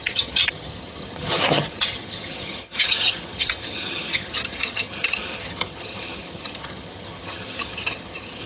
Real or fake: fake